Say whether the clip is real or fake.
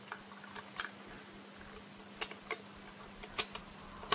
real